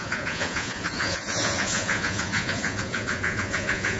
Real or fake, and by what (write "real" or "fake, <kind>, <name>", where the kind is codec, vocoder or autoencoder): fake, vocoder, Vocos